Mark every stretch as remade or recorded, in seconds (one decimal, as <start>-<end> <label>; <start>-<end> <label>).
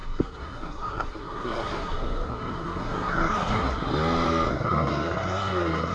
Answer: 0.0-3.9 remade; 3.9-4.5 recorded; 4.5-5.9 remade